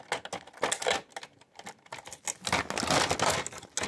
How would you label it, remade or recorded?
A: recorded